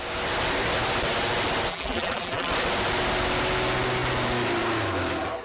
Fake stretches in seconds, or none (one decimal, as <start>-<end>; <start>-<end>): 1.7-2.5